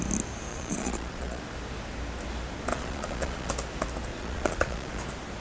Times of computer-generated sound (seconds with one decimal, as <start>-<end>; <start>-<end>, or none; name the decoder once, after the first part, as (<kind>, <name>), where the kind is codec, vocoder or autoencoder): 0.5-1.4 (vocoder, Vocos); 2.7-3.5; 4.1-5.0